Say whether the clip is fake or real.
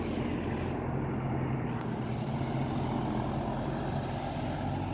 real